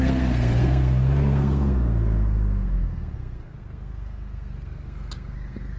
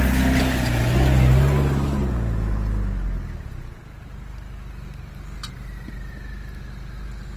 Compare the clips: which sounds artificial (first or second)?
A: first